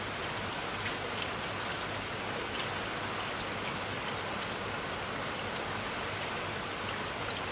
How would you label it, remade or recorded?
recorded